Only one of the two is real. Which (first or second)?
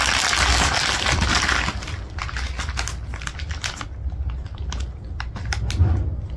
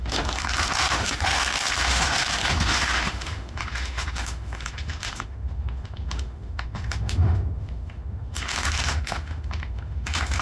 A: first